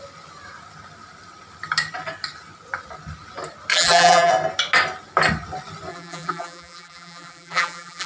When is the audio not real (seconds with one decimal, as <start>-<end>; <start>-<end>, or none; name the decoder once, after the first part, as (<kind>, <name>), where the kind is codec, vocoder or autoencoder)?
3.7-4.3 (vocoder, BigVGAN v2); 5.9-8.1